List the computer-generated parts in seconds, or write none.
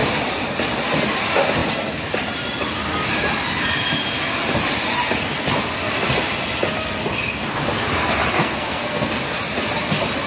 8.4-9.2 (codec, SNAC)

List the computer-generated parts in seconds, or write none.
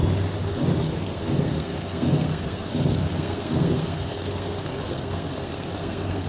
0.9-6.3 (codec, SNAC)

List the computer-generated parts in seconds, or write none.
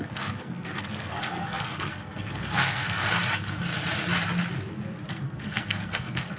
0.0-3.0 (codec, SNAC); 5.1-6.4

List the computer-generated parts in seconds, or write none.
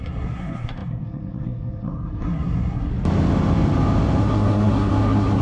0.0-2.9 (codec, SNAC); 4.2-5.4